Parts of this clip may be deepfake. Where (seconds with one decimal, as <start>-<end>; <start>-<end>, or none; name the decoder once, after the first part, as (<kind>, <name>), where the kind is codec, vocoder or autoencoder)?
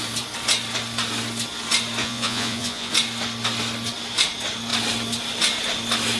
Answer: 2.0-2.9 (vocoder, Vocos)